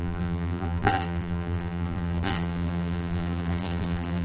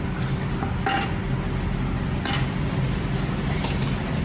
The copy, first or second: first